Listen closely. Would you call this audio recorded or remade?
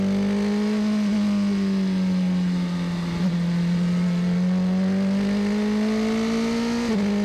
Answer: recorded